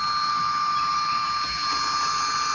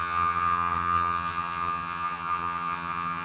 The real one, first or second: first